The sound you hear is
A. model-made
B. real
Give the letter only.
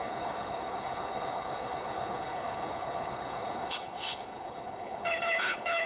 A